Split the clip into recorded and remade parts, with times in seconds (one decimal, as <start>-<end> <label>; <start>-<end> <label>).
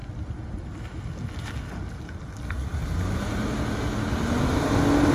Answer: 0.0-5.1 recorded